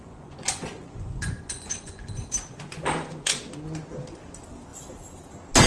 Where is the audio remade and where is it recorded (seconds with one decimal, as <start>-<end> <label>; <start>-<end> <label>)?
0.0-3.4 remade; 3.4-5.7 recorded